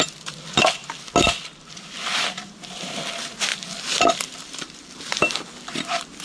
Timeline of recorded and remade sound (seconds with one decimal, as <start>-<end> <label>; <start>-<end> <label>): 0.0-3.5 recorded; 3.5-5.0 remade; 5.0-6.2 recorded